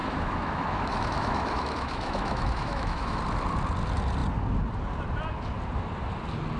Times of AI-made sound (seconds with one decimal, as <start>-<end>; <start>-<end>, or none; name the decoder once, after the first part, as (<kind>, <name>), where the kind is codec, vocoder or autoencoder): 0.0-3.2 (autoencoder, DAC-VAE)